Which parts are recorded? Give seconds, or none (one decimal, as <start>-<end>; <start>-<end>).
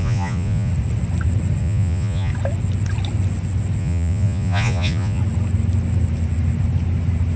0.7-1.6; 2.3-3.8; 5.2-7.4